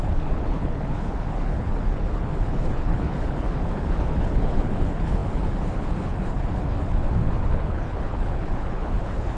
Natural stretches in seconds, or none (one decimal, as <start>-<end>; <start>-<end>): none